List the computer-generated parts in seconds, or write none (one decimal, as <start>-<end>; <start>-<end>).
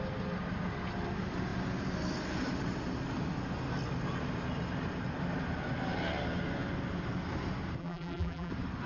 7.8-8.5